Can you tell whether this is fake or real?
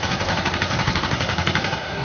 fake